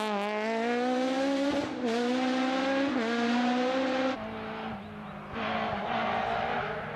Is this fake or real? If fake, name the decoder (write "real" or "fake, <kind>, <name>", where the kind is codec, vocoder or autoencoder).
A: real